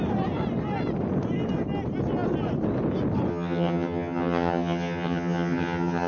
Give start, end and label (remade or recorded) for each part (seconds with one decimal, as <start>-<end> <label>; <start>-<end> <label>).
0.0-3.3 recorded; 3.3-6.1 remade